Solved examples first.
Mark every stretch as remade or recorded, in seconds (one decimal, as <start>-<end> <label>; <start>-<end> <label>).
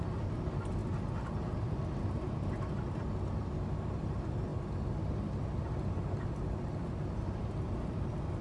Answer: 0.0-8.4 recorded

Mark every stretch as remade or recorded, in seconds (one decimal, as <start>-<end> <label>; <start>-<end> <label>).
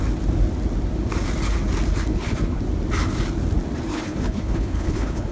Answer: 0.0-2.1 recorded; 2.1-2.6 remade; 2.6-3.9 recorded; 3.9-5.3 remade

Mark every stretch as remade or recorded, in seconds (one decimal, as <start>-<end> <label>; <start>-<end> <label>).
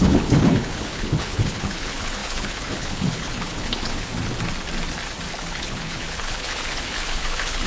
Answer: 0.0-4.1 remade; 4.1-5.4 recorded; 5.4-7.7 remade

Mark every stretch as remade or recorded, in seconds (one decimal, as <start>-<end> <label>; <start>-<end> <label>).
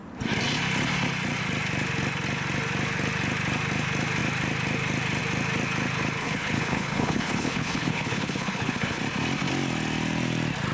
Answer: 0.0-6.2 recorded; 6.2-9.0 remade; 9.0-10.7 recorded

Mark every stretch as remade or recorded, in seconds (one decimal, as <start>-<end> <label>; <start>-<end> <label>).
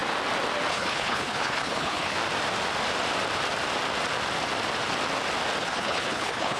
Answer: 0.0-0.7 recorded; 0.7-2.2 remade; 2.2-5.6 recorded; 5.6-6.6 remade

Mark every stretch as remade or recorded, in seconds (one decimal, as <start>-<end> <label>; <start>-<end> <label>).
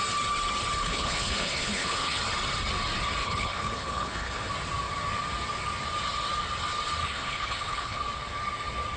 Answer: 0.0-0.8 recorded; 0.8-2.2 remade; 2.2-3.2 recorded; 3.2-4.5 remade; 4.5-7.0 recorded; 7.0-8.0 remade; 8.0-9.0 recorded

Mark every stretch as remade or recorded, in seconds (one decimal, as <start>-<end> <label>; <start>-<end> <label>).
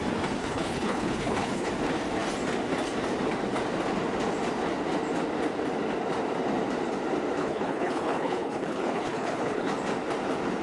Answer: 0.0-0.4 recorded; 0.4-1.7 remade; 1.7-7.4 recorded; 7.4-9.7 remade; 9.7-10.6 recorded